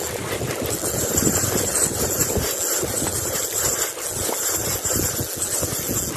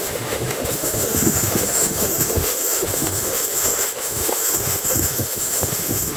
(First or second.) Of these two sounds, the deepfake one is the second